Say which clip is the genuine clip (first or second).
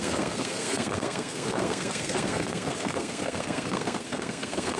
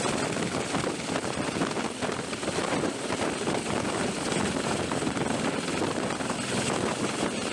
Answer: second